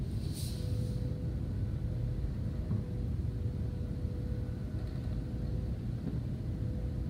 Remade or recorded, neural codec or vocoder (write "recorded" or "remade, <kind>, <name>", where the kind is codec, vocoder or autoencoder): recorded